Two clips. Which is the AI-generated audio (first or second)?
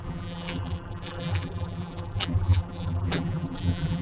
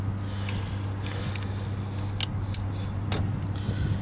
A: first